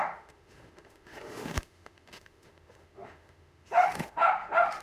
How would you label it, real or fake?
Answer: fake